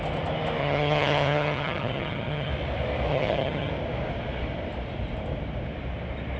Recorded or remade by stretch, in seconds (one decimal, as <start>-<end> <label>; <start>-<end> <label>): 0.0-0.6 recorded; 0.6-2.5 remade; 2.5-3.1 recorded; 3.1-3.7 remade; 3.7-6.4 recorded